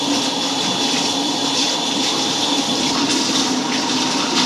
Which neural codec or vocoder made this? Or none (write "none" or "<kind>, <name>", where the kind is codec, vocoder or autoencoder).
vocoder, BigVGAN v2